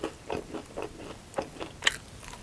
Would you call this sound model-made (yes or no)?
no